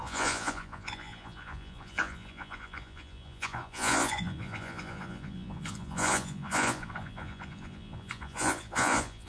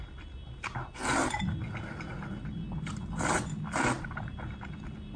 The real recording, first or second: second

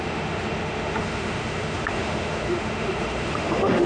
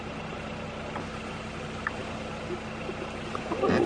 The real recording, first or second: second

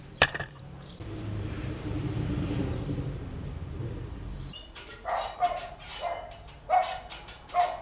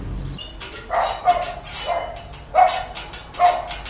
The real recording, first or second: second